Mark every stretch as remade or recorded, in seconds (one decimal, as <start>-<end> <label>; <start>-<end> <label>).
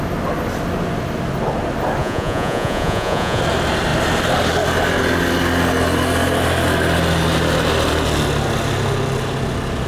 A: 0.0-2.0 recorded; 2.0-3.4 remade; 3.4-9.9 recorded